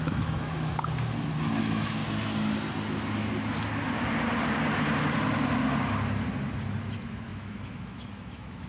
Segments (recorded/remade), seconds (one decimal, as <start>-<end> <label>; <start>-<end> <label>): 0.0-0.7 remade; 0.7-1.6 recorded; 1.6-2.0 remade; 2.0-6.8 recorded; 6.8-8.7 remade